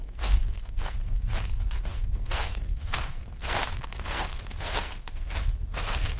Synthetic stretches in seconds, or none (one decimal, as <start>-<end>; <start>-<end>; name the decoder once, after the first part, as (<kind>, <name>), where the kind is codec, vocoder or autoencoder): 0.0-6.2 (codec, SNAC)